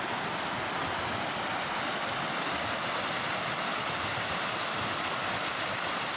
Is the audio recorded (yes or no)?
yes